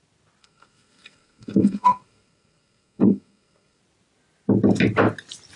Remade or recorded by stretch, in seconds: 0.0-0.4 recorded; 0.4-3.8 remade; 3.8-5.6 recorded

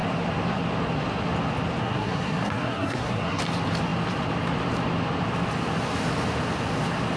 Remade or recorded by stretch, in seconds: 0.0-1.8 recorded; 1.8-3.4 remade; 3.4-7.2 recorded

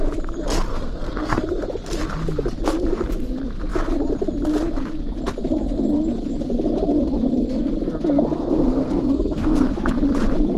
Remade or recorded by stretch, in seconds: 0.0-0.7 recorded; 0.7-1.4 remade; 1.4-8.4 recorded; 8.4-9.7 remade; 9.7-10.6 recorded